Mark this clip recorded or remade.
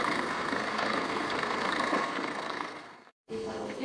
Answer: remade